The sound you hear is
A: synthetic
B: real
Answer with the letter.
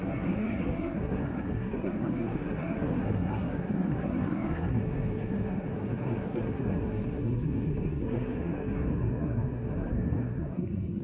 A